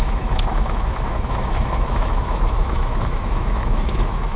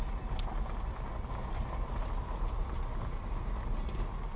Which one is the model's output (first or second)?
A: first